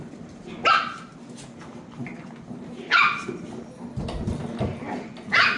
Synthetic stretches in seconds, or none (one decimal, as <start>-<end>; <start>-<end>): none